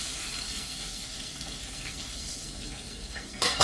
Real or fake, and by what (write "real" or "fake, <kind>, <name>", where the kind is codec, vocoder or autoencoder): fake, codec, SNAC